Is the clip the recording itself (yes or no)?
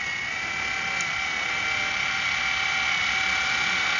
yes